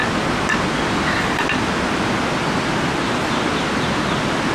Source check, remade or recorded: recorded